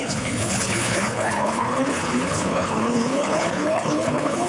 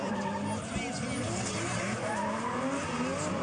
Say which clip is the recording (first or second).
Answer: second